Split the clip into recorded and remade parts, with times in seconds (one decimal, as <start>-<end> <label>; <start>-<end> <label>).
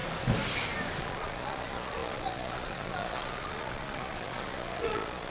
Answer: 0.0-1.0 recorded; 1.0-5.3 remade